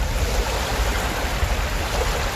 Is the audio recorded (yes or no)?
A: no